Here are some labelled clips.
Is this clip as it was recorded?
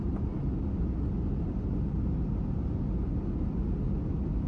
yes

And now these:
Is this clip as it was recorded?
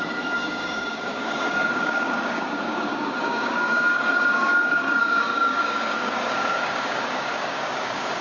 no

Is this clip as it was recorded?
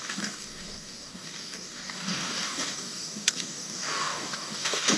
no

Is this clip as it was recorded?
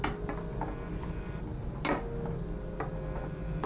yes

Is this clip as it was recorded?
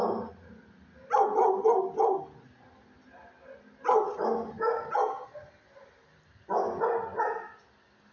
yes